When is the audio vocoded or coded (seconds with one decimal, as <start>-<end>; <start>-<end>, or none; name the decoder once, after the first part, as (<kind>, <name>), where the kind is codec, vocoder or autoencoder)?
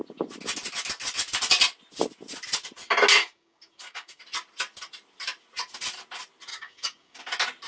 3.2-4.2 (codec, DAC); 6.5-7.2